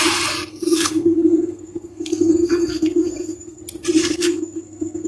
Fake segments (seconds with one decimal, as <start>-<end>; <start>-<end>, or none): 0.5-3.6; 4.0-5.1

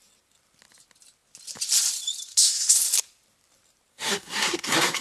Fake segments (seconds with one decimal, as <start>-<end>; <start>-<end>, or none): 2.3-2.8; 3.9-5.0

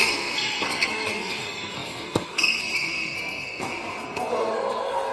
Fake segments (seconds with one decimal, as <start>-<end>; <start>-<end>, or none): 0.0-5.1